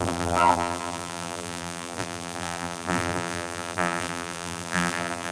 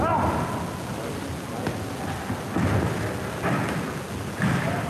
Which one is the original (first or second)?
second